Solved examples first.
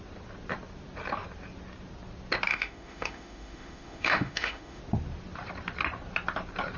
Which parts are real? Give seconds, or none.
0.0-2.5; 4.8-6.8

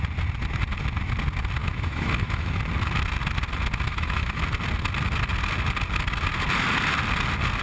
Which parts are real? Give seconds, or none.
0.0-1.6; 2.6-3.9; 4.4-7.6

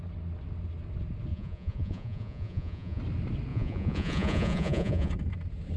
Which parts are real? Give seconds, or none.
0.0-1.3; 3.0-3.5; 5.1-5.8

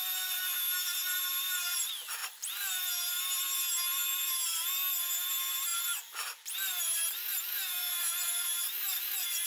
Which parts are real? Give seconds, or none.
0.0-9.5

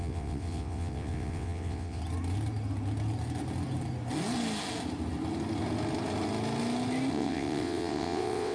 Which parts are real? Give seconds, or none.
2.0-7.1

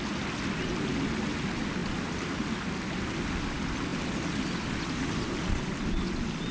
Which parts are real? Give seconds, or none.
0.0-6.5